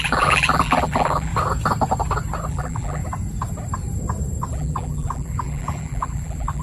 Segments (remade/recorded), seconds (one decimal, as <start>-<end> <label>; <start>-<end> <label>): 0.0-1.3 remade; 1.3-2.5 recorded; 2.5-3.0 remade; 3.0-4.5 recorded; 4.5-6.6 remade